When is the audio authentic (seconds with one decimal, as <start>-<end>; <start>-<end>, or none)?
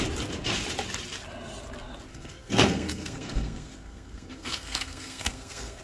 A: 0.0-2.1